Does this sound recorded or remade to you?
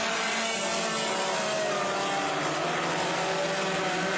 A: recorded